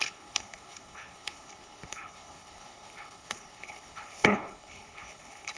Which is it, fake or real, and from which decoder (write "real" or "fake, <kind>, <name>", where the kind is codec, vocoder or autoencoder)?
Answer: fake, codec, HILCodec